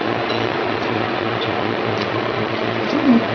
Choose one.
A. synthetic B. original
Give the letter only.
A